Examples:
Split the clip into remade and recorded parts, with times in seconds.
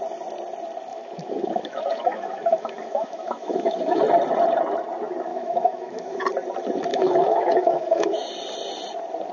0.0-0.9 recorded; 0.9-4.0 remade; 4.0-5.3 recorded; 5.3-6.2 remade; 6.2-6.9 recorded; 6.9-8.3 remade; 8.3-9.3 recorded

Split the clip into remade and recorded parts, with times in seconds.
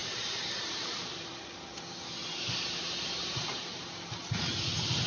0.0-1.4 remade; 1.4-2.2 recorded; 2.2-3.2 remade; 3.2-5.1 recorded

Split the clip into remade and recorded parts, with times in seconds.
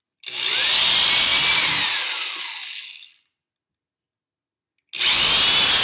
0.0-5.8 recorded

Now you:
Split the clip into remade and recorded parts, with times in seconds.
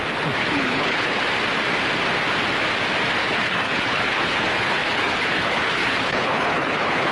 0.0-0.4 recorded; 0.4-1.2 remade; 1.2-3.2 recorded; 3.2-7.1 remade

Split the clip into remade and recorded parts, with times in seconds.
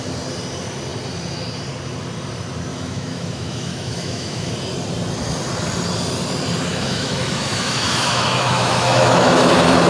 0.0-2.7 recorded; 2.7-4.5 remade; 4.5-6.7 recorded; 6.7-9.4 remade; 9.4-9.9 recorded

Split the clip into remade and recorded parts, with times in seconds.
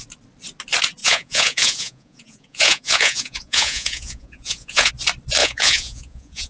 0.0-1.0 recorded; 1.0-4.9 remade; 4.9-5.4 recorded; 5.4-6.5 remade